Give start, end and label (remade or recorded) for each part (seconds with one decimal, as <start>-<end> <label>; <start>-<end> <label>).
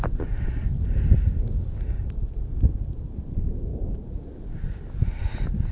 0.0-5.7 recorded